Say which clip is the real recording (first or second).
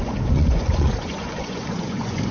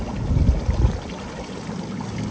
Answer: second